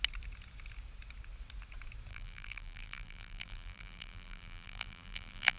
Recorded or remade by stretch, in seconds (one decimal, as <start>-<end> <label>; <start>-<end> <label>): 0.0-2.1 recorded; 2.1-5.6 remade